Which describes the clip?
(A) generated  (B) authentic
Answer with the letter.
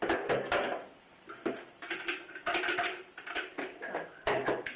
B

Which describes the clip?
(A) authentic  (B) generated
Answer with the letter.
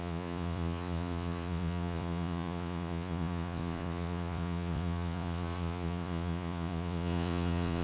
B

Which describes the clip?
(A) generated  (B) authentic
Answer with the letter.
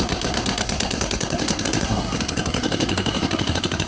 A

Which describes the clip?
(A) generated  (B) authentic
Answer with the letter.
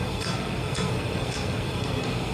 A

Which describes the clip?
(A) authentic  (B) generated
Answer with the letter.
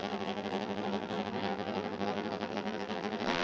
B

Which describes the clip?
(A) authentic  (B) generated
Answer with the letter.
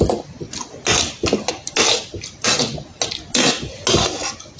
A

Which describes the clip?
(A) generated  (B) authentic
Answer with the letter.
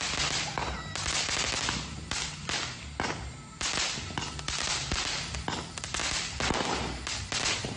B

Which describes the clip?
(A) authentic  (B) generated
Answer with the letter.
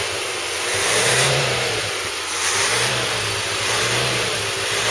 B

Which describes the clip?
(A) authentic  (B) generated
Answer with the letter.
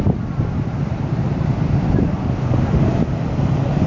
A